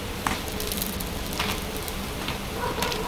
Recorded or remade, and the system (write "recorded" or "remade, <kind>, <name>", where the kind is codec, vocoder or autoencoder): remade, vocoder, BigVGAN v2